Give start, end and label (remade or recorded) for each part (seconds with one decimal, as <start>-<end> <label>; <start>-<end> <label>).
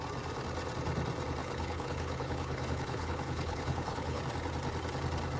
0.0-1.4 recorded; 1.4-4.2 remade; 4.2-5.4 recorded